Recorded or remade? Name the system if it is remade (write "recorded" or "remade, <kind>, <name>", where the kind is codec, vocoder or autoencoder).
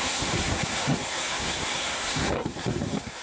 remade, codec, SNAC